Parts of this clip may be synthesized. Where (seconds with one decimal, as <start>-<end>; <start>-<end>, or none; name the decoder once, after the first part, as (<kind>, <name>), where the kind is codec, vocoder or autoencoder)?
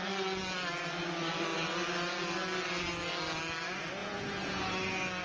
4.0-4.6 (vocoder, Vocos)